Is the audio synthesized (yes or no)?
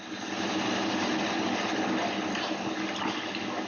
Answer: no